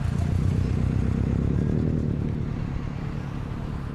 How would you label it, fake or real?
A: real